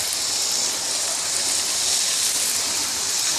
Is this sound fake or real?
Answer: real